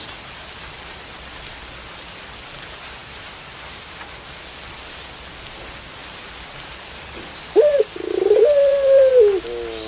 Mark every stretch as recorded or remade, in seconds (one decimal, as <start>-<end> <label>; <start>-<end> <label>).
0.0-3.0 recorded; 3.0-3.8 remade; 3.8-6.0 recorded; 6.0-9.1 remade; 9.1-9.9 recorded